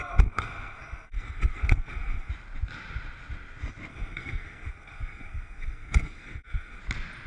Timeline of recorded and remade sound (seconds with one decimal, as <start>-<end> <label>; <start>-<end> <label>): 0.0-2.3 remade; 2.3-3.9 recorded; 3.9-6.8 remade; 6.8-7.3 recorded